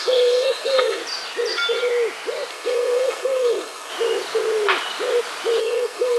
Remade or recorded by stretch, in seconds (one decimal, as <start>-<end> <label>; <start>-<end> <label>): 0.0-1.0 remade; 1.0-2.5 recorded; 2.5-3.9 remade; 3.9-5.6 recorded; 5.6-6.2 remade